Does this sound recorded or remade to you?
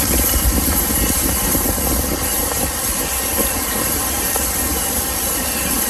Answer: recorded